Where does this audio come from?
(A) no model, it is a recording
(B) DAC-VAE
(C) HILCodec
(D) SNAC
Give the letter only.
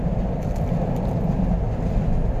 A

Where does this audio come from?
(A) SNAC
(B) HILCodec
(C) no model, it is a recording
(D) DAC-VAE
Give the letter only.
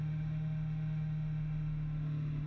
D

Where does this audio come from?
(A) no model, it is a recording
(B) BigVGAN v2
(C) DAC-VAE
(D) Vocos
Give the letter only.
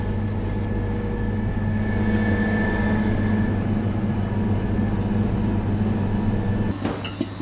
A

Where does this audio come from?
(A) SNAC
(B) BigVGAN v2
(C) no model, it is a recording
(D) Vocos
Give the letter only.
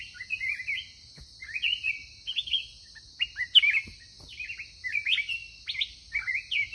C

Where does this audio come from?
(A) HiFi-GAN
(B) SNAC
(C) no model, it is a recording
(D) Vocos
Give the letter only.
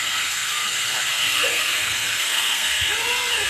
B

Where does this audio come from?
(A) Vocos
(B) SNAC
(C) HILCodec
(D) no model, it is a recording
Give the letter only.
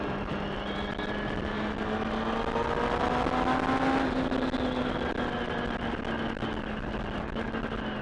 D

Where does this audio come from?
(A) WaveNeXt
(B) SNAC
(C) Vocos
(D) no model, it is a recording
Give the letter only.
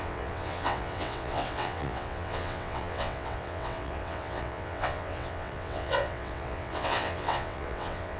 A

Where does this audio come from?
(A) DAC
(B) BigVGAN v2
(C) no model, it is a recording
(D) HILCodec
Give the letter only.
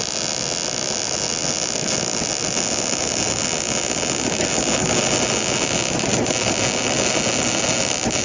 C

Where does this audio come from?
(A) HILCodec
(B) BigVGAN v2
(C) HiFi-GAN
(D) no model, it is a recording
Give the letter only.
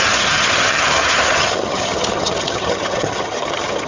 C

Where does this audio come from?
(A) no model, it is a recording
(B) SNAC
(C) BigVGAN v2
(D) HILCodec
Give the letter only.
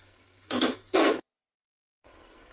B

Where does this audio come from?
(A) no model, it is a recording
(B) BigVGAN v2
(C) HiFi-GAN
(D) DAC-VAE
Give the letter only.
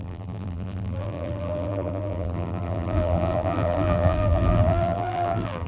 B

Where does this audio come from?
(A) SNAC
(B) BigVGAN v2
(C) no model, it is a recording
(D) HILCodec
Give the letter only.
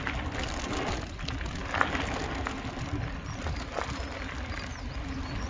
C